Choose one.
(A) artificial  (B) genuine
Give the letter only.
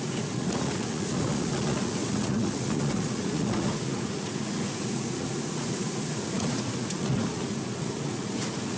A